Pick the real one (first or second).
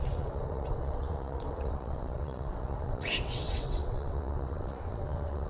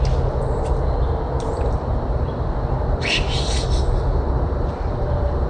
second